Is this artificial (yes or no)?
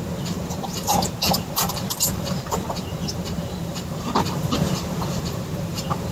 yes